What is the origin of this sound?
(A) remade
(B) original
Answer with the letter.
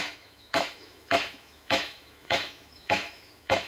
A